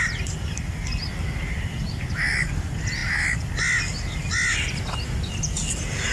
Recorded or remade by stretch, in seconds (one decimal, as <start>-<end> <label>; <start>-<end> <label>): 0.0-6.1 recorded